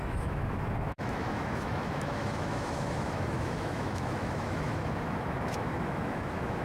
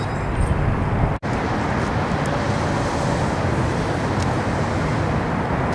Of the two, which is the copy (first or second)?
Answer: first